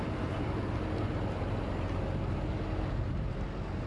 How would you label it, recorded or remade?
recorded